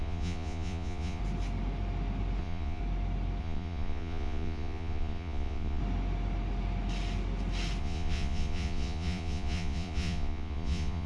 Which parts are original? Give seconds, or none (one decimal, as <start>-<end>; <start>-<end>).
1.2-2.4; 2.8-3.4; 5.8-7.8